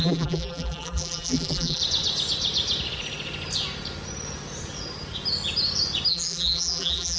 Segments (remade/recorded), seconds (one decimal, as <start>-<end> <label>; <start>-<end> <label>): 0.0-1.8 remade; 1.8-6.1 recorded; 6.1-7.2 remade